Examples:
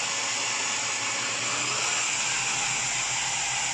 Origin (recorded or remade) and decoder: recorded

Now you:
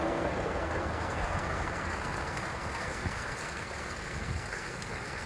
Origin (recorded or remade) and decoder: remade, codec, SNAC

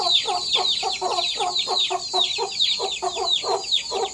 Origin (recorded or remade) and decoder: recorded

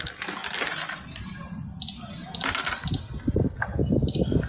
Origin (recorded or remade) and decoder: recorded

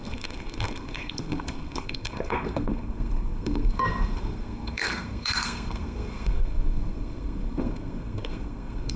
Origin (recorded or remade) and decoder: remade, codec, SNAC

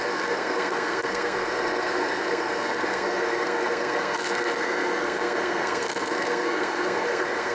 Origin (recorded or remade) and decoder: remade, codec, SNAC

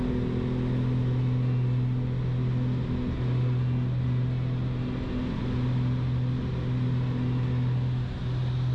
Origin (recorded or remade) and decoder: recorded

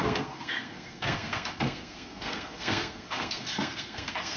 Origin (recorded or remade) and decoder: remade, codec, SNAC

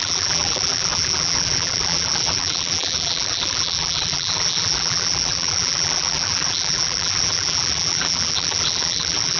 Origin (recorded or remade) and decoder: remade, vocoder, BigVGAN v2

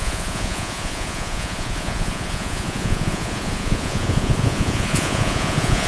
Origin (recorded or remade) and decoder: remade, vocoder, Vocos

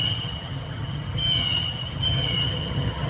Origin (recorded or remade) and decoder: remade, vocoder, HiFi-GAN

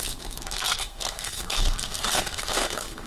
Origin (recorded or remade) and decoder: remade, codec, SNAC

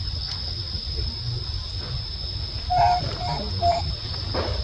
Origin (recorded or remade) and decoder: recorded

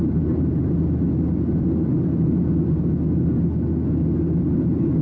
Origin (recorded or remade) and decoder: recorded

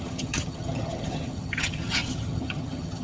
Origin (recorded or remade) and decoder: remade, vocoder, HiFi-GAN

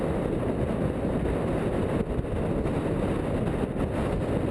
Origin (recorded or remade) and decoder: recorded